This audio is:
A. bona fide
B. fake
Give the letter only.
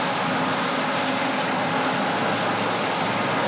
A